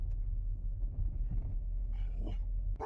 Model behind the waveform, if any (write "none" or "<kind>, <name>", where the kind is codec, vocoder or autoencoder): none